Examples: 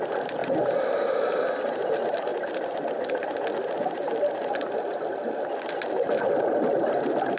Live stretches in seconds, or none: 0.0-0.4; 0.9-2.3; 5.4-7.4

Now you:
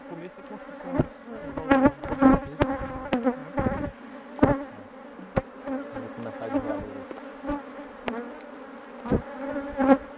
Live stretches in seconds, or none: 0.0-10.2

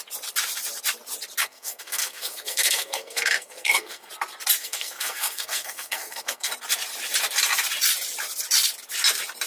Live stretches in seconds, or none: 0.0-1.4; 4.1-4.6; 6.5-9.5

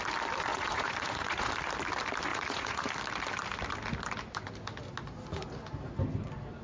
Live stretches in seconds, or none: 0.0-0.5; 1.5-2.3; 2.9-6.6

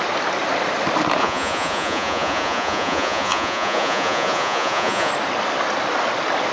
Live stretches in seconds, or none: 0.0-1.2; 5.1-6.5

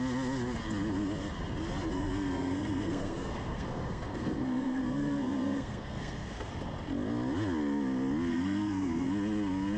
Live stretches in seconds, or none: 0.0-1.9; 6.5-8.3; 9.1-9.8

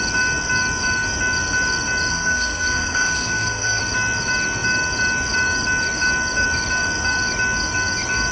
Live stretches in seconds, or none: 0.0-2.1; 3.8-8.3

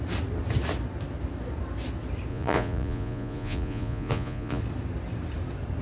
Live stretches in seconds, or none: 0.0-2.3; 4.6-5.8